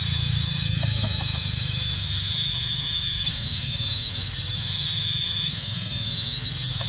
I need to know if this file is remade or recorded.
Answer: remade